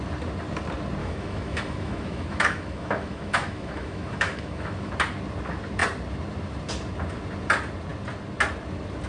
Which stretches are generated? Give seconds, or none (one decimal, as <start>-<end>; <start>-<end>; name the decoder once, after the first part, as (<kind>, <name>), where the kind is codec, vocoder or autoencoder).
1.0-4.9 (autoencoder, DAC-VAE)